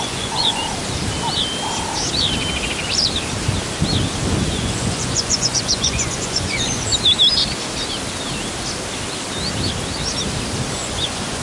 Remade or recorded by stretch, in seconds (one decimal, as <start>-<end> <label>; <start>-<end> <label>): 0.0-0.6 remade; 0.6-4.5 recorded; 4.5-6.9 remade; 6.9-10.7 recorded; 10.7-11.4 remade